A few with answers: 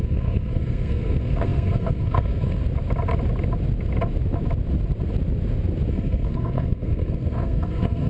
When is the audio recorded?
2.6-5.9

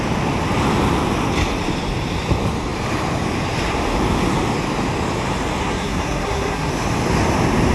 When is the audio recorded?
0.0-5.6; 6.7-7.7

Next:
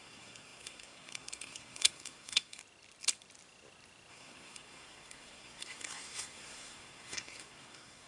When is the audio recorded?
2.6-4.1

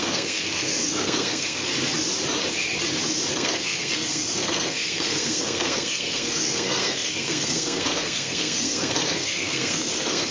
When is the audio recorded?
1.7-3.3

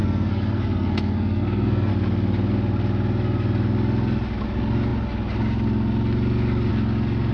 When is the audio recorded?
1.9-7.3

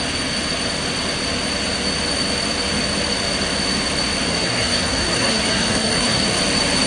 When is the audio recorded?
0.0-4.3; 6.4-6.9